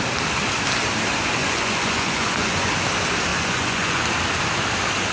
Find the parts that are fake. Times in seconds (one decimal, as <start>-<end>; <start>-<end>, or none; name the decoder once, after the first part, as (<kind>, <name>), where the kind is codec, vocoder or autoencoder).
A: 1.4-2.7 (vocoder, Vocos); 3.3-4.0